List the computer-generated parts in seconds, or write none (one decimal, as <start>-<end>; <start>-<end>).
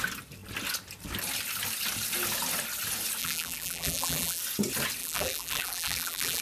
3.2-4.4; 5.0-6.4